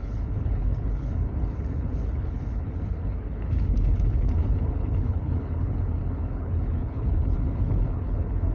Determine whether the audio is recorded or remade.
remade